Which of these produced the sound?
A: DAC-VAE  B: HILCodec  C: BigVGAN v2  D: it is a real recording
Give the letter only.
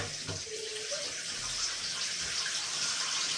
D